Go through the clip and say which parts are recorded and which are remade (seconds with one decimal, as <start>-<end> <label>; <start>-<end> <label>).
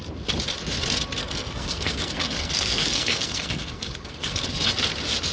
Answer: 0.0-1.2 recorded; 1.2-4.4 remade; 4.4-5.3 recorded